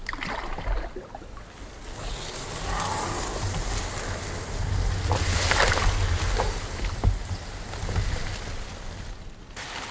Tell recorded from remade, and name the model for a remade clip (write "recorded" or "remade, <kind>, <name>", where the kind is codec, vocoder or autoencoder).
recorded